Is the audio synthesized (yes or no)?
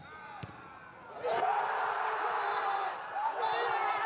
no